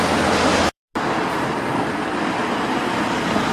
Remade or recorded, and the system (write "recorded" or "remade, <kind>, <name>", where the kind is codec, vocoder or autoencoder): remade, vocoder, BigVGAN v2